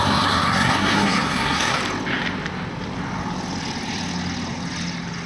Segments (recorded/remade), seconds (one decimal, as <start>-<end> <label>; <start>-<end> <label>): 0.0-1.8 remade; 1.8-5.3 recorded